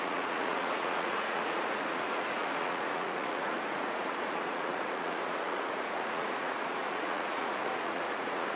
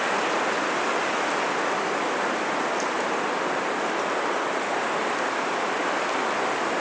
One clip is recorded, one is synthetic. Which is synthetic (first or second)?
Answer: first